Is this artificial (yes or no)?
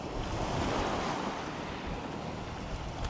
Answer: no